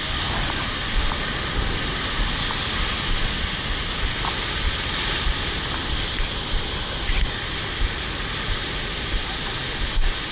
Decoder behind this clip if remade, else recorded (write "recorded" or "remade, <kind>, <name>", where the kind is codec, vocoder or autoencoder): recorded